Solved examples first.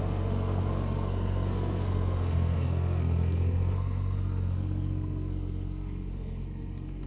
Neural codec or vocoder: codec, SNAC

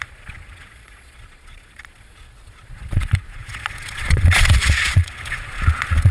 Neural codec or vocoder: vocoder, Vocos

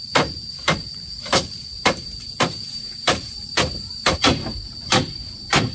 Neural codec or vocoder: vocoder, BigVGAN v2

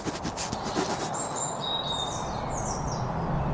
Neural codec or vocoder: none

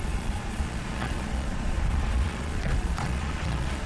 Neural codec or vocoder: vocoder, Vocos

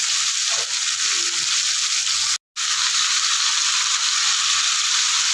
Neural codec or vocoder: none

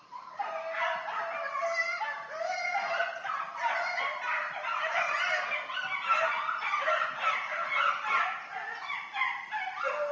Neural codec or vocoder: none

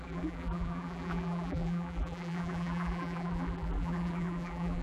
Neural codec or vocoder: vocoder, BigVGAN v2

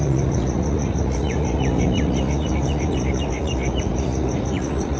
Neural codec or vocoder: vocoder, Vocos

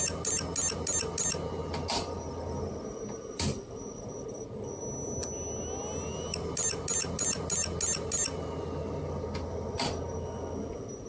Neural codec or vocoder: none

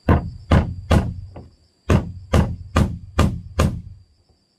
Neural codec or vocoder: none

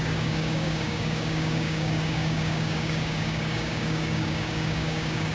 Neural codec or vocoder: codec, DAC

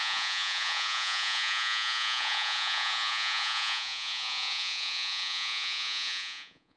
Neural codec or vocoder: vocoder, Vocos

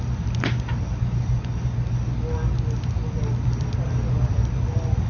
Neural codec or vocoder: none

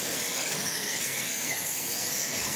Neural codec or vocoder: codec, SNAC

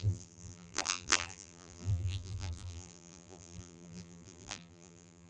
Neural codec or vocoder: vocoder, BigVGAN v2